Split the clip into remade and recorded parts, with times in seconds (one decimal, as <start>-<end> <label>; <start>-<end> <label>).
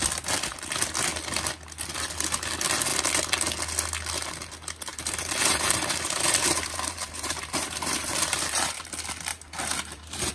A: 0.0-4.9 recorded; 4.9-8.8 remade; 8.8-9.3 recorded; 9.3-10.3 remade